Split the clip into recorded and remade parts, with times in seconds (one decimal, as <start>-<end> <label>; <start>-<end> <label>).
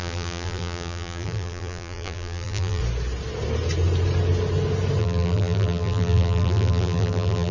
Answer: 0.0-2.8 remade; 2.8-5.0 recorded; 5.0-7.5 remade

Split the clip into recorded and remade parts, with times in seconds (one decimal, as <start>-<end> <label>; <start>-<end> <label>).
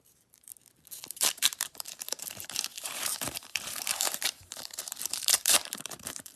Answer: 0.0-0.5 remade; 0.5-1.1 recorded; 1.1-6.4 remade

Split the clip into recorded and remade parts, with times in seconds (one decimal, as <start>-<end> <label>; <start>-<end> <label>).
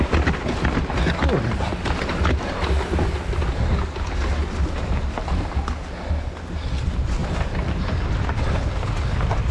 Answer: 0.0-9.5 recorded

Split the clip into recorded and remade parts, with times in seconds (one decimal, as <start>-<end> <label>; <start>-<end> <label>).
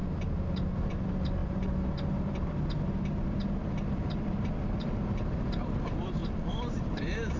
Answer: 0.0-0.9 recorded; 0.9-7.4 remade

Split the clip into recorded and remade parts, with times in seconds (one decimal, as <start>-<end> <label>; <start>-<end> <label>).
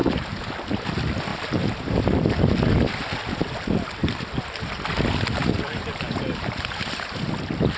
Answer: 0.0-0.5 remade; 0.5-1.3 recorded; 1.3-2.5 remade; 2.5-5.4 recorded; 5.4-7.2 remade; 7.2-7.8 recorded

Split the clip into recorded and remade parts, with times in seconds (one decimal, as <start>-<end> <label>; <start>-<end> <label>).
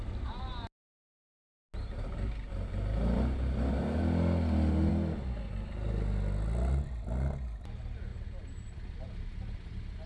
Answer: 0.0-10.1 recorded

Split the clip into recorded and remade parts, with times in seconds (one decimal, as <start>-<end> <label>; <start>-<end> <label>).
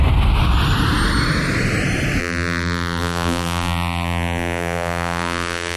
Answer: 0.0-2.2 recorded; 2.2-5.8 remade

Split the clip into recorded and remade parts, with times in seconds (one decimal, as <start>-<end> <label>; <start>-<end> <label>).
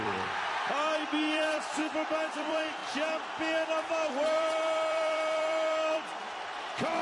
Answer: 0.0-1.8 remade; 1.8-2.3 recorded; 2.3-2.8 remade; 2.8-4.1 recorded; 4.1-7.0 remade